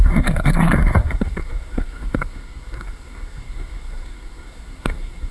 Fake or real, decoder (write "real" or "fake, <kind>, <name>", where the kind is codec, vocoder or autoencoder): fake, codec, SNAC